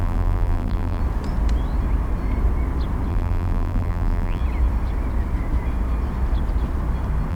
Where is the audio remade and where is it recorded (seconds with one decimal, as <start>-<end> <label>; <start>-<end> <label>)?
0.0-1.0 remade; 1.0-3.1 recorded; 3.1-4.4 remade; 4.4-7.3 recorded